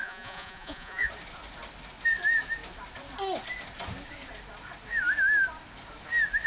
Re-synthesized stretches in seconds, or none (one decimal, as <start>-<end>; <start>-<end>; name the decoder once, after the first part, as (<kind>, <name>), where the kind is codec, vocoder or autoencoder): 0.0-1.1 (vocoder, Vocos)